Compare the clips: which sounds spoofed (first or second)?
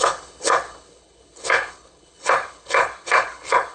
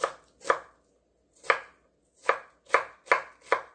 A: first